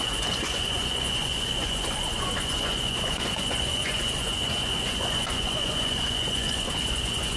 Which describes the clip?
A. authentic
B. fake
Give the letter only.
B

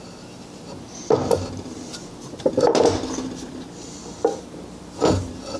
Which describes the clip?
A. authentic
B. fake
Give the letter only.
A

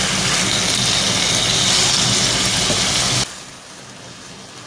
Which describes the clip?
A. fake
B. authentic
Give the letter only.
B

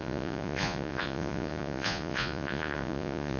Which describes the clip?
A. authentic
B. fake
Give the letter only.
B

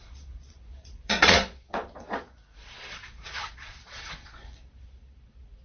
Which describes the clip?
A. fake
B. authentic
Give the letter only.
A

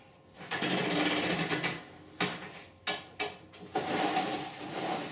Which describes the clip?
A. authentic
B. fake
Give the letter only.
A